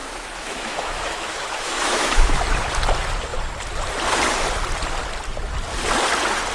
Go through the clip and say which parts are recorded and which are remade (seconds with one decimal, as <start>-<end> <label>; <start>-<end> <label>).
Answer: 0.0-2.4 remade; 2.4-6.5 recorded

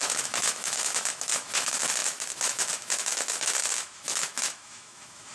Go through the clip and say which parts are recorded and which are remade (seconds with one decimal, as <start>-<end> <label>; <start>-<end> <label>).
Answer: 0.0-5.3 remade

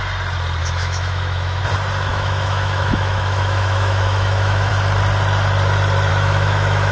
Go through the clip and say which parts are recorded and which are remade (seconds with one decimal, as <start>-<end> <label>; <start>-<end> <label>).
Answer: 0.0-0.6 recorded; 0.6-1.6 remade; 1.6-2.1 recorded; 2.1-4.7 remade; 4.7-6.1 recorded; 6.1-6.9 remade